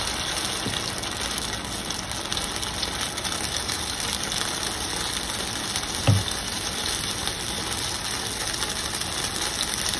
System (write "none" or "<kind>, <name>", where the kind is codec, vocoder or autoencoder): none